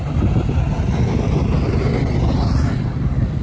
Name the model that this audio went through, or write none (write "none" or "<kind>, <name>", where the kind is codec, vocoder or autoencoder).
none